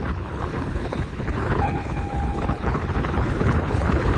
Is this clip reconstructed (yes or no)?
yes